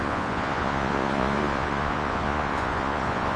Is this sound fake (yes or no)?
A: yes